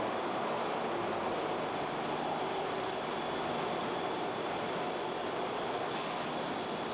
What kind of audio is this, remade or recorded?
recorded